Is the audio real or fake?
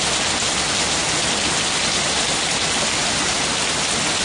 real